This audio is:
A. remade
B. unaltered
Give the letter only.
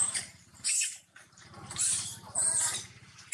A